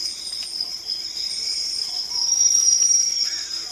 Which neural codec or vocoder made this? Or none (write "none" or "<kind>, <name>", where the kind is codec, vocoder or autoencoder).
vocoder, BigVGAN v2